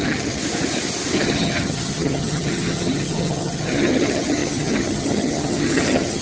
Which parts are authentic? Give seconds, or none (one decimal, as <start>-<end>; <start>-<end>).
0.4-1.2